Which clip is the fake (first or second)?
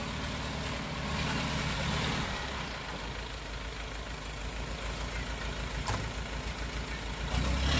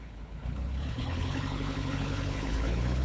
second